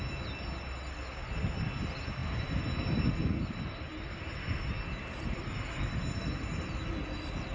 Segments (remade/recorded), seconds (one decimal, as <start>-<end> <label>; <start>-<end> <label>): 0.0-7.5 recorded